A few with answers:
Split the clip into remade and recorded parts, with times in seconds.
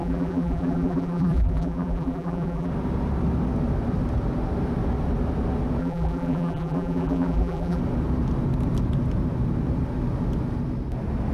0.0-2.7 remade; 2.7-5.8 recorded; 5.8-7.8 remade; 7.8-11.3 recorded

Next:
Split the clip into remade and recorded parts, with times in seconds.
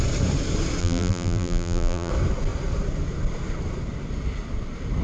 0.0-0.8 recorded; 0.8-2.1 remade; 2.1-5.0 recorded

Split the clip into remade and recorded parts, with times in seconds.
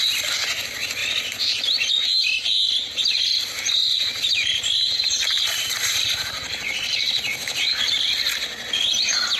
0.0-1.0 recorded; 1.0-1.9 remade; 1.9-3.8 recorded; 3.8-7.6 remade; 7.6-9.4 recorded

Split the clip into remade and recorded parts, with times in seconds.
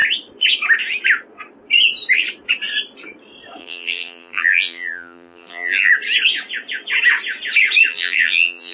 0.0-3.6 recorded; 3.6-5.9 remade; 5.9-7.9 recorded; 7.9-8.7 remade